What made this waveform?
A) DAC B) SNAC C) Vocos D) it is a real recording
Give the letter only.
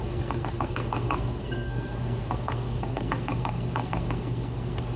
B